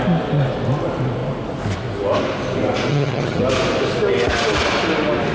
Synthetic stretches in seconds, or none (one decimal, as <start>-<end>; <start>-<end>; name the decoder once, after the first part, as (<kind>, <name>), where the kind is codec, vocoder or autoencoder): 2.9-3.4 (vocoder, HiFi-GAN)